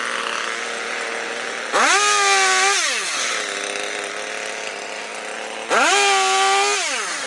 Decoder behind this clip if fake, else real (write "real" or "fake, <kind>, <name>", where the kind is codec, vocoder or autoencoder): real